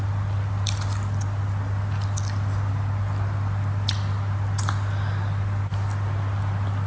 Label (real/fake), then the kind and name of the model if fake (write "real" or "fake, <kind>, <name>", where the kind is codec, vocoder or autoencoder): real